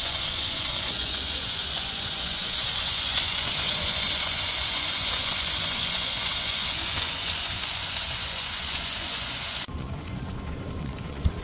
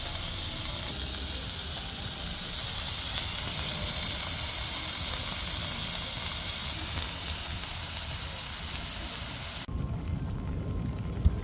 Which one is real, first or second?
second